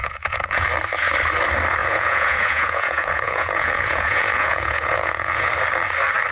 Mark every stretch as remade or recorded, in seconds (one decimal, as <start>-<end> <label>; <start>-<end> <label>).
0.0-0.7 remade; 0.7-1.8 recorded; 1.8-5.5 remade; 5.5-6.3 recorded